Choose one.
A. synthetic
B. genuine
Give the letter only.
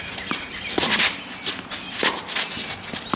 B